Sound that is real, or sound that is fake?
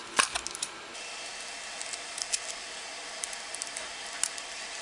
real